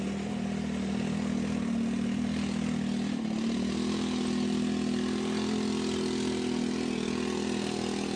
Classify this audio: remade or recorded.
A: recorded